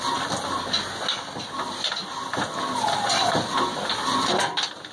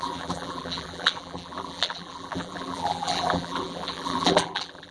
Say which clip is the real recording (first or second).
first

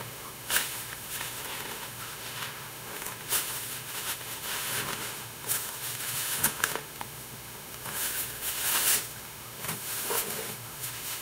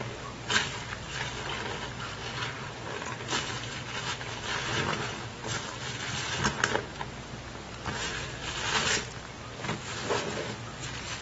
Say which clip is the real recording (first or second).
second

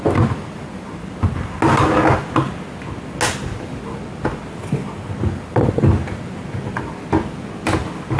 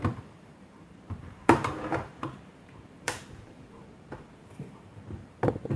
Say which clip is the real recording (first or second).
first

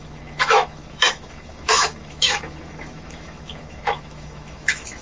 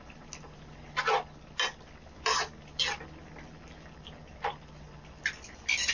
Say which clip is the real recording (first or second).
second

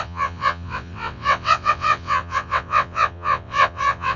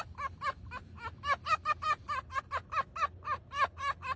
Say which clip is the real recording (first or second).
second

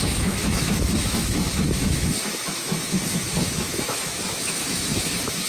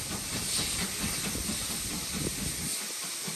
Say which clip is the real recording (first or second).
second